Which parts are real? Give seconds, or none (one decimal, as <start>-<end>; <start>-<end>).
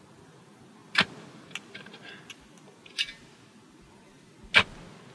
0.0-5.1